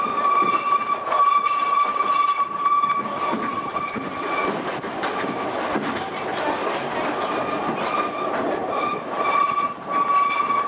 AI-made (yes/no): no